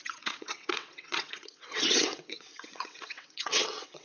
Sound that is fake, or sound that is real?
fake